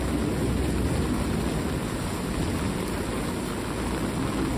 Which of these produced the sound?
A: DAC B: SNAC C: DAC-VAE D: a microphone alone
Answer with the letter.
D